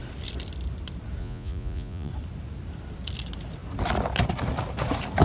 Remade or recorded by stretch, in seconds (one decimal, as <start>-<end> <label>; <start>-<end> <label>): 0.0-1.2 recorded; 1.2-2.1 remade; 2.1-5.2 recorded